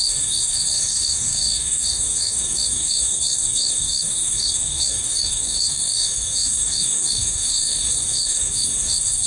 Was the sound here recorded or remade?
remade